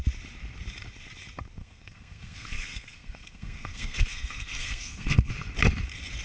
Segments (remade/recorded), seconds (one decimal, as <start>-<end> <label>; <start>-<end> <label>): 0.0-1.6 recorded; 1.6-5.3 remade; 5.3-6.2 recorded